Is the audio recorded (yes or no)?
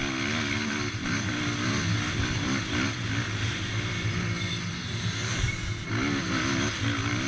yes